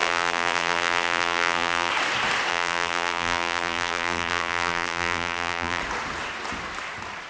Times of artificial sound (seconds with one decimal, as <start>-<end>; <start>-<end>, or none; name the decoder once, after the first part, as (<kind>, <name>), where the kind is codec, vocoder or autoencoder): 0.0-1.9 (vocoder, BigVGAN v2); 2.5-5.8